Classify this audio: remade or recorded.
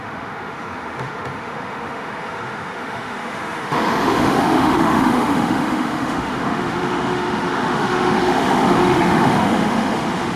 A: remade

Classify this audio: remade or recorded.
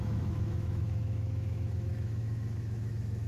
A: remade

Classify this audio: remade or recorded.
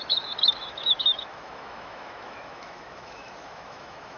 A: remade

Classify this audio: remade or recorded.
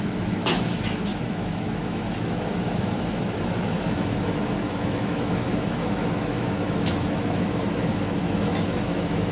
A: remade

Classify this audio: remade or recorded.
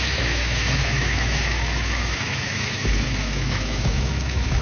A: remade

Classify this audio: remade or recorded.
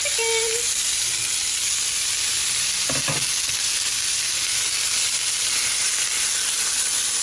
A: recorded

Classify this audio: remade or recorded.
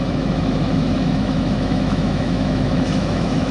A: remade